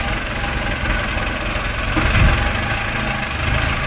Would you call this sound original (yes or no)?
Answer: yes